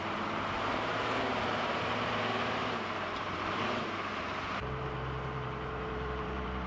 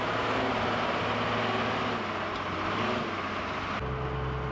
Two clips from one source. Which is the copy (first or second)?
first